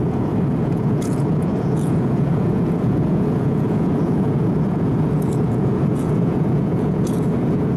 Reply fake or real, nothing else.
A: fake